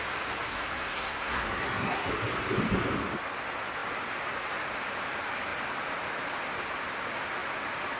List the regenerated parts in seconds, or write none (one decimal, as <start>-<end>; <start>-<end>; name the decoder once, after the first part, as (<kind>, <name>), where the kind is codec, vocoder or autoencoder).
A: 0.5-2.1 (codec, SNAC)